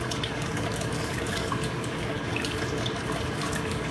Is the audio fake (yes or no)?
yes